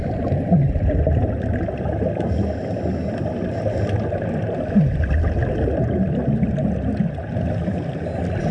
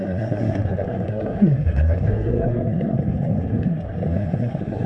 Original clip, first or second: first